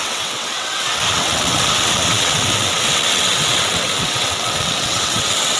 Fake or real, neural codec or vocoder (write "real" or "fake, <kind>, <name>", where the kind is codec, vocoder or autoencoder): fake, vocoder, WaveNeXt